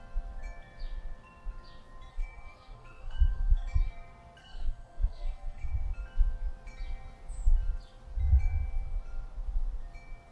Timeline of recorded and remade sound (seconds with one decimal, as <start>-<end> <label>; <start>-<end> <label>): 0.0-2.1 recorded; 2.1-3.9 remade; 3.9-4.4 recorded; 4.4-5.7 remade; 5.7-10.3 recorded